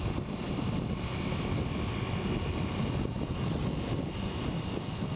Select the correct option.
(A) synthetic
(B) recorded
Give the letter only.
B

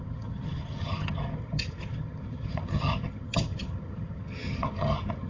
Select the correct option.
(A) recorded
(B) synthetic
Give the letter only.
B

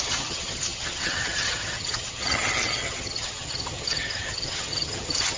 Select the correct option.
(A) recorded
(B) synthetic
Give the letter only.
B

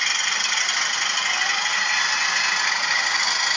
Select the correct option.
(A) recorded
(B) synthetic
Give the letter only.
A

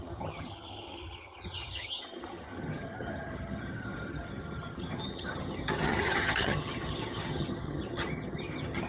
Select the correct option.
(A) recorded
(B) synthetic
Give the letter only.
B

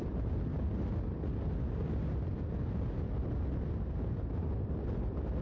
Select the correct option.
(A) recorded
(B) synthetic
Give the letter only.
A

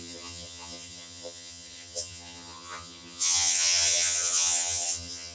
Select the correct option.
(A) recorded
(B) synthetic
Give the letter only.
B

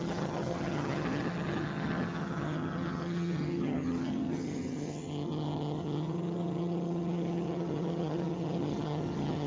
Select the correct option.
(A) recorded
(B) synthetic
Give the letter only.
B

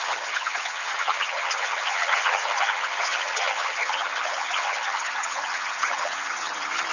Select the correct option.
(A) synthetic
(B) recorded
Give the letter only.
A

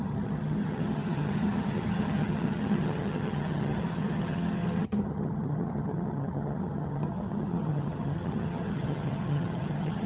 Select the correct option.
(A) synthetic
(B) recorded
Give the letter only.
A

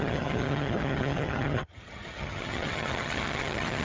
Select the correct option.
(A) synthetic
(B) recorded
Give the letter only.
A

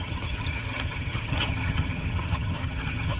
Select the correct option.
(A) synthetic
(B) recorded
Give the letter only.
A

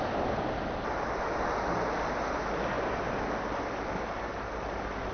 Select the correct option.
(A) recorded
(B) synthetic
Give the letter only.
A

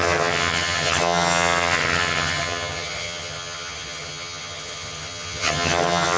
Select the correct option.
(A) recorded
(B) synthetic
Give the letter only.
B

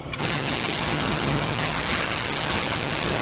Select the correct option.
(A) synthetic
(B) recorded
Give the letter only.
A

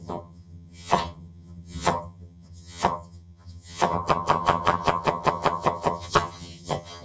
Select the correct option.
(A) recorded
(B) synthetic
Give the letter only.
B